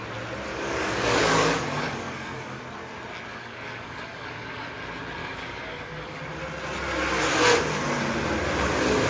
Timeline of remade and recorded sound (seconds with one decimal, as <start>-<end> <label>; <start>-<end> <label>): 0.0-0.5 recorded; 0.5-2.6 remade; 2.6-3.3 recorded; 3.3-4.7 remade; 4.7-5.2 recorded; 5.2-6.2 remade; 6.2-9.1 recorded